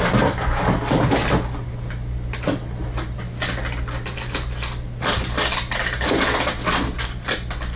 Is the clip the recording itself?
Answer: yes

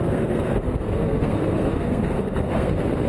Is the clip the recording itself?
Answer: no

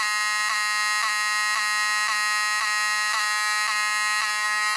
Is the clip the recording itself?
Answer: yes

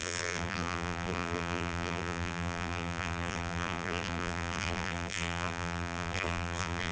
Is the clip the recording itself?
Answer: no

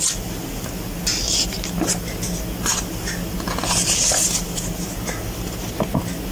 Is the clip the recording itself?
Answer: yes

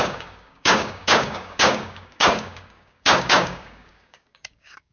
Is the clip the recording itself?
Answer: no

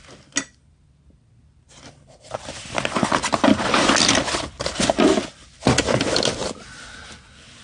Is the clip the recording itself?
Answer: yes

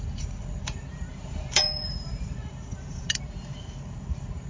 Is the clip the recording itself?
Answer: no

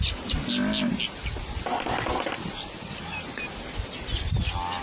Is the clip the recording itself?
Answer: yes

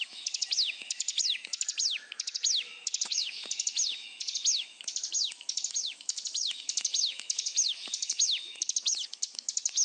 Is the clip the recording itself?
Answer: no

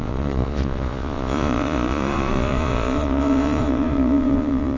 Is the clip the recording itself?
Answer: no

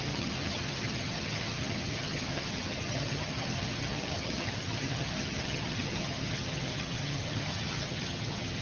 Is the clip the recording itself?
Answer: no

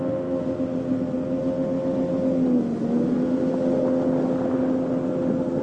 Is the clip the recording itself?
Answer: yes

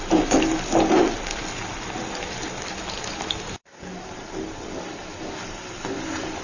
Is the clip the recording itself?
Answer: no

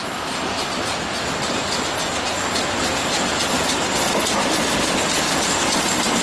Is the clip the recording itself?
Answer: yes